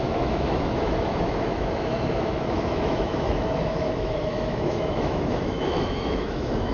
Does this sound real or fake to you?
fake